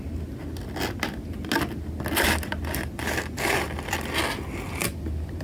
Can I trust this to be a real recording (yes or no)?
yes